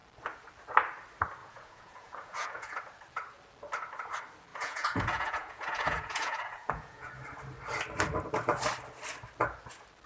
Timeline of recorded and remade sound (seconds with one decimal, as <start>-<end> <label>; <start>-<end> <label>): 0.0-1.4 recorded; 1.4-2.8 remade; 2.8-4.5 recorded; 4.5-7.1 remade; 7.1-10.1 recorded